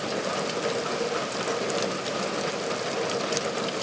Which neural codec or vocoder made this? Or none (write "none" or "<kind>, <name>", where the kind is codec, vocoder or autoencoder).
vocoder, BigVGAN v2